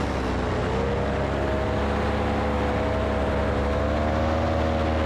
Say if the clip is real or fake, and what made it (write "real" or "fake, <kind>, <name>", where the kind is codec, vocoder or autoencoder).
real